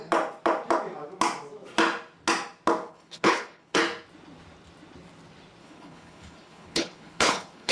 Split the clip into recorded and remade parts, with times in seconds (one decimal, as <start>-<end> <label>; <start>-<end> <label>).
0.0-2.9 recorded; 2.9-3.8 remade; 3.8-5.6 recorded; 5.6-7.7 remade